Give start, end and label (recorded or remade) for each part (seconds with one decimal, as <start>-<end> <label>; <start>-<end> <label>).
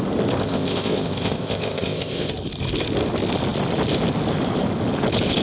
0.0-0.4 recorded; 0.4-2.3 remade; 2.3-5.4 recorded